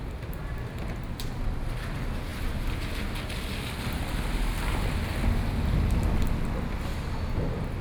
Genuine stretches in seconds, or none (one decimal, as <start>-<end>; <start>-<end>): 0.0-7.8